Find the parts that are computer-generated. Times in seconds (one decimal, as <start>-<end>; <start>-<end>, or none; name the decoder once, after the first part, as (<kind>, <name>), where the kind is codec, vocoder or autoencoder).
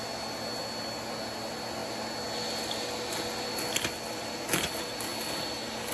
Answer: none